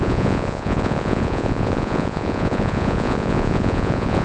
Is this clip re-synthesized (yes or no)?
yes